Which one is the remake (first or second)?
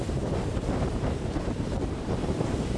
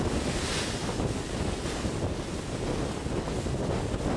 first